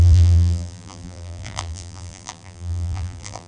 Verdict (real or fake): fake